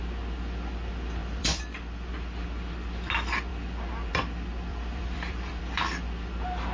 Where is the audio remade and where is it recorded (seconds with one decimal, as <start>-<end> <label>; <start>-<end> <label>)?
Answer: 0.0-1.2 recorded; 1.2-2.1 remade; 2.1-4.7 recorded; 4.7-5.6 remade; 5.6-6.7 recorded